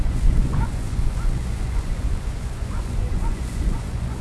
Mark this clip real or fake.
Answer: fake